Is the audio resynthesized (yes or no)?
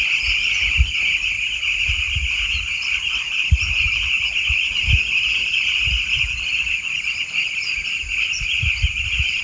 no